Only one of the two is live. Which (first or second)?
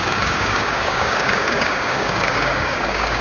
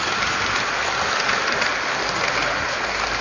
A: second